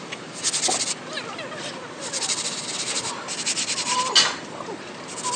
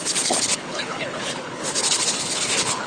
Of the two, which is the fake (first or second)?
second